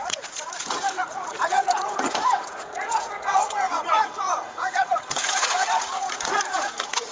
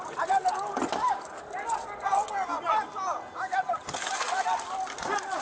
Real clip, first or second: second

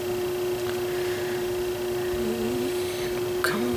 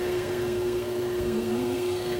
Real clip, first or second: first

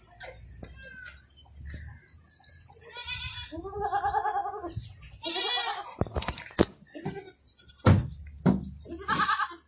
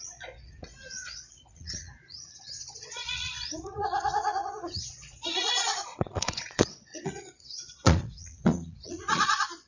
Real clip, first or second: first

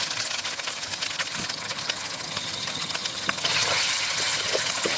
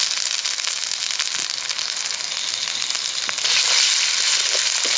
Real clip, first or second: second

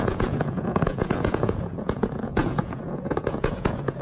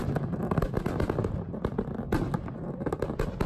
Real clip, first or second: second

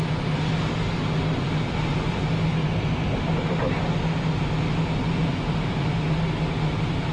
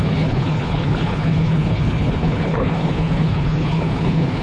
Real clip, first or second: first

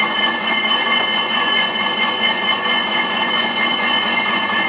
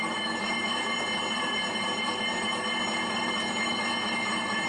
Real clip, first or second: second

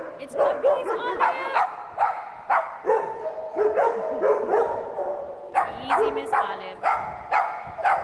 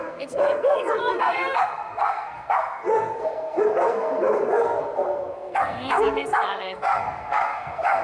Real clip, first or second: first